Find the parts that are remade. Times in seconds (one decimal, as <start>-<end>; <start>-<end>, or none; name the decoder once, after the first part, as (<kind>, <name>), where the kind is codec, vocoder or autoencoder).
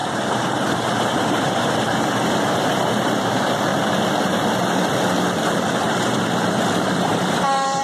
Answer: 0.0-3.7 (vocoder, BigVGAN v2); 6.5-7.8